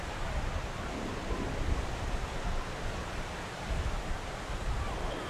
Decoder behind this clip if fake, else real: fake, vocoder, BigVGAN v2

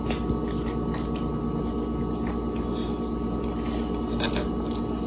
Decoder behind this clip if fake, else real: real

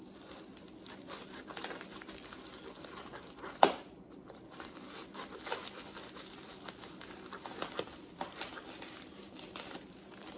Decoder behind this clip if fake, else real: real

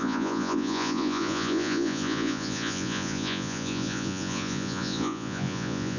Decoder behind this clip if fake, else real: fake, vocoder, Vocos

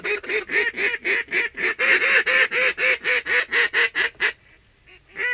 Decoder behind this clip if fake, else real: real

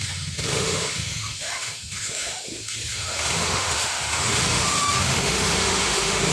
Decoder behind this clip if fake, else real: fake, autoencoder, DAC-VAE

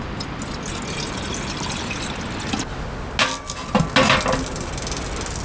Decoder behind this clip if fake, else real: real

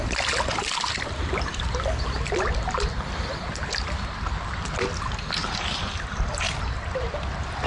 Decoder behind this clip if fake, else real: real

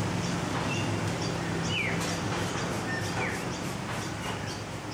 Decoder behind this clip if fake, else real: real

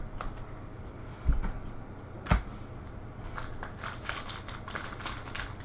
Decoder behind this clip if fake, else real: real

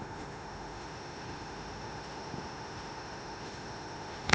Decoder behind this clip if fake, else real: fake, autoencoder, DAC-VAE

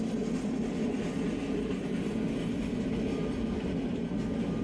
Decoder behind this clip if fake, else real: real